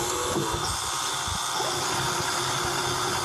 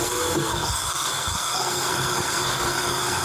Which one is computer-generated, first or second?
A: second